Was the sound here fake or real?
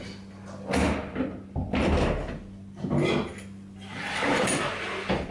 real